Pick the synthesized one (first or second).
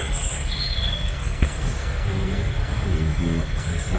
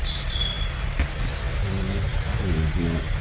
first